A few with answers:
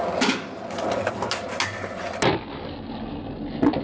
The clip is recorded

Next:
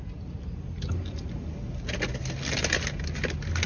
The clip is recorded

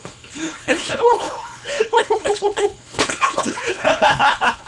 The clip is remade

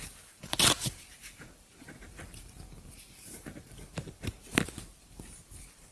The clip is remade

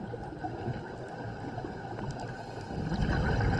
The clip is recorded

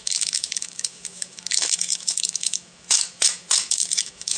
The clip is remade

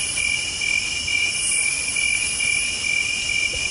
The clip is recorded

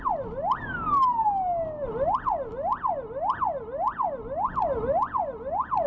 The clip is recorded